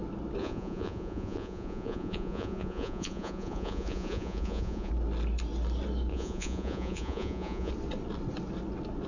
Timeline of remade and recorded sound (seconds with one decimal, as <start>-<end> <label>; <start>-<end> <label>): 0.0-0.4 recorded; 0.4-4.9 remade; 4.9-6.1 recorded; 6.1-7.7 remade; 7.7-9.1 recorded